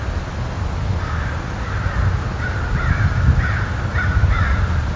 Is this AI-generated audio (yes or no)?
no